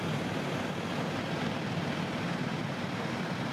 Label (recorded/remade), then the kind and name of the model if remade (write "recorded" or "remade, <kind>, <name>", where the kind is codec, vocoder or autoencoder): recorded